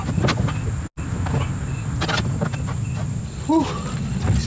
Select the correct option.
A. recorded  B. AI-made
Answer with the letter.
A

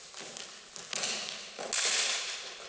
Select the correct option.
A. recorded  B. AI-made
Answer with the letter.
A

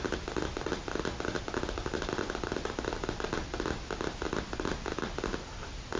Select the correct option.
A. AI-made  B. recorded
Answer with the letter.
B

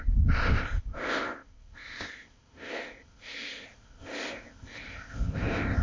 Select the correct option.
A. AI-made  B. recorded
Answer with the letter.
A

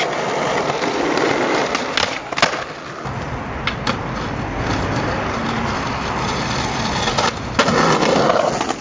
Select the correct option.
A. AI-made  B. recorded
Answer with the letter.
B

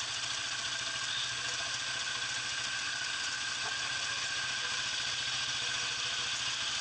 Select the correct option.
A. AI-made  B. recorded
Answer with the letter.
B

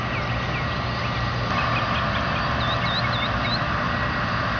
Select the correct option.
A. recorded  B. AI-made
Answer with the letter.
A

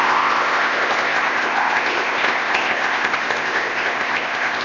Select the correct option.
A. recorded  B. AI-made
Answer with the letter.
B